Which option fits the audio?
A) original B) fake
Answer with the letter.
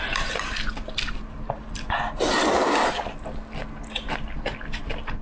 A